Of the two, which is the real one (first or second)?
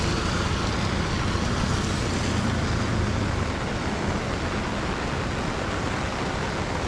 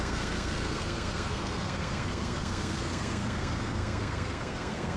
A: first